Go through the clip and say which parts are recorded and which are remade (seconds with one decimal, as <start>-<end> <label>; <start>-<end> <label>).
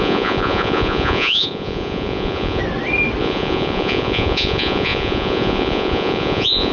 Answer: 0.0-2.6 remade; 2.6-3.2 recorded; 3.2-6.7 remade